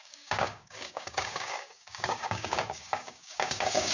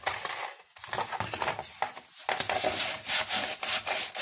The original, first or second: second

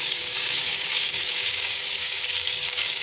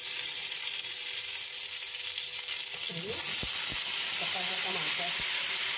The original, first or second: second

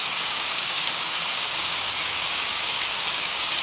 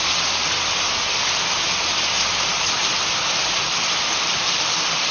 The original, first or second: second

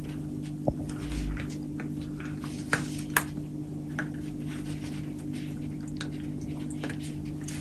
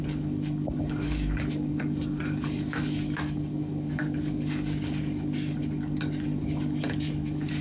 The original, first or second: first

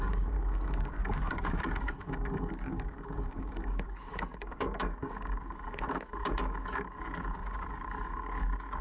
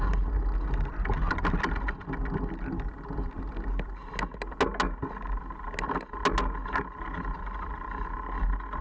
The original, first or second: second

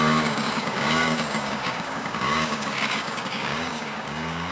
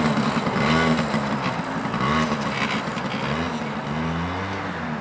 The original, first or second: second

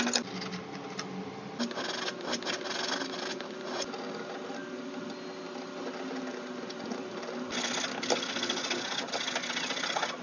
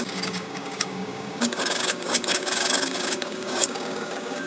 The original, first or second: first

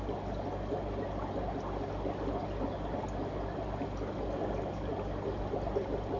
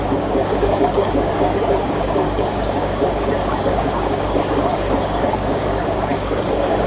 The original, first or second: first